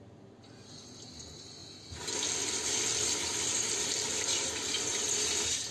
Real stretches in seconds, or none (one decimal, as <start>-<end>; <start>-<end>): 0.0-5.7